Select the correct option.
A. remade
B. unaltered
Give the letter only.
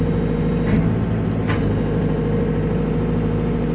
B